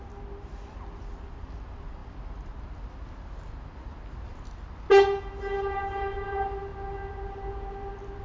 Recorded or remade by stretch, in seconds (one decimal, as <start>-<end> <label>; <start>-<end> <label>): 0.0-8.2 recorded